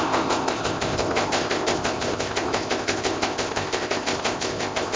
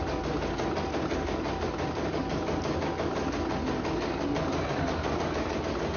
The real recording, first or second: second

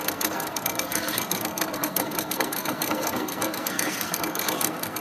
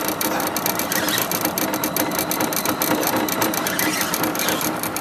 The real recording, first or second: second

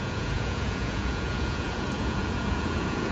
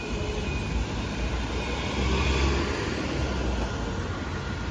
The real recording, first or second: second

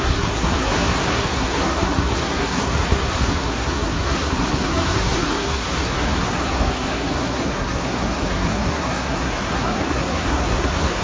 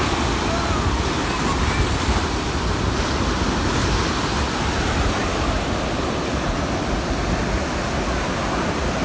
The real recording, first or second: second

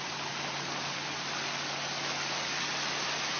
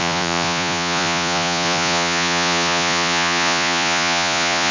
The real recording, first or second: first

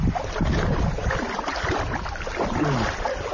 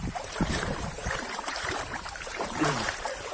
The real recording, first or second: first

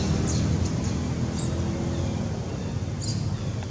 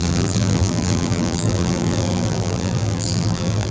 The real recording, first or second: first